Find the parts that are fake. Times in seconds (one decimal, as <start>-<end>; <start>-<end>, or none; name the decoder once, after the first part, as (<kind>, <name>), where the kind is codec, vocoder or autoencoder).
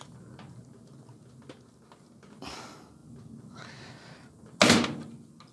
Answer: none